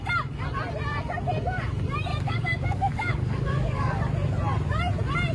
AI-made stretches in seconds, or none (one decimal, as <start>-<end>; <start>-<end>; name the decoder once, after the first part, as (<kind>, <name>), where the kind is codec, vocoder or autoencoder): 2.1-4.0 (codec, DAC)

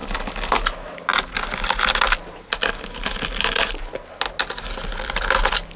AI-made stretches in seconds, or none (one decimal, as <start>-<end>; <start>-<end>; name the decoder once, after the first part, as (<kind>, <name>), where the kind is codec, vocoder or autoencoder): none

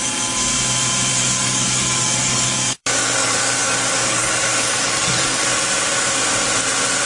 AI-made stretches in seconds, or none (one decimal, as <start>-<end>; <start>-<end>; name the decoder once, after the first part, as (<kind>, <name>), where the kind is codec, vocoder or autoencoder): 1.1-5.4 (codec, DAC)

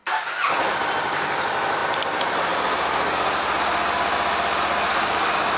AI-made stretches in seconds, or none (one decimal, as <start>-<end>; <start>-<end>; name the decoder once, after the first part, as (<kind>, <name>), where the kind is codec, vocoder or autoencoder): 4.9-5.6 (codec, DAC)

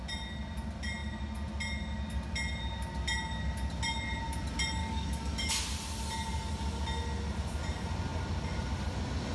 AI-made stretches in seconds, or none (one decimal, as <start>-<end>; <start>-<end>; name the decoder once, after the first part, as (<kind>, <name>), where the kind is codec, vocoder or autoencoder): 4.8-5.6 (codec, DAC)

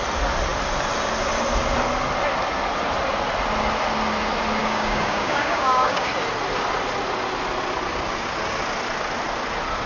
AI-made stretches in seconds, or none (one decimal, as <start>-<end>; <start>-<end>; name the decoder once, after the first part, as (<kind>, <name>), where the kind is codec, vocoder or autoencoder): 4.6-6.1 (codec, DAC)

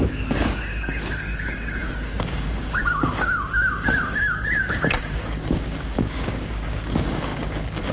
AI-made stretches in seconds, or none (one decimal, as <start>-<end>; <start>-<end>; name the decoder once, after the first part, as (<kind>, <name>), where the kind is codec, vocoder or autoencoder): 0.0-7.9 (codec, DAC)